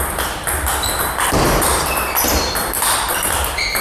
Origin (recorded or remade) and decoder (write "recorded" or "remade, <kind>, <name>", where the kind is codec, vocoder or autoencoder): recorded